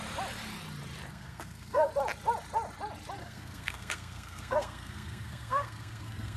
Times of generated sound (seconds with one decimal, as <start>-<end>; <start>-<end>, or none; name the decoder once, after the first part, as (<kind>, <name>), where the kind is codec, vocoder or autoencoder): 1.1-1.9 (codec, SNAC); 3.2-6.4

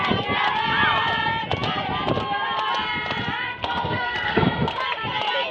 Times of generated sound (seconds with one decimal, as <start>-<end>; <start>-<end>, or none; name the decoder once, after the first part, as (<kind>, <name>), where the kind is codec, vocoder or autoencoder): 3.5-4.8 (codec, SNAC)